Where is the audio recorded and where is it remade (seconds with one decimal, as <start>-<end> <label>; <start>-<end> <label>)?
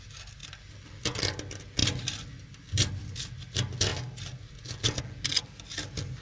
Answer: 0.0-6.2 recorded